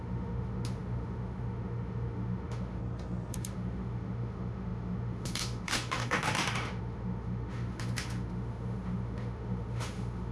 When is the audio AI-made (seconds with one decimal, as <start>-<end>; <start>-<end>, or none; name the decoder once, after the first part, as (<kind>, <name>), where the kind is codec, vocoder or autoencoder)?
0.0-2.8 (autoencoder, DAC-VAE); 3.3-10.3